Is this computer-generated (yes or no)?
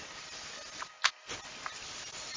no